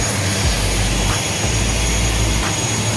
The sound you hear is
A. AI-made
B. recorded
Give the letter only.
B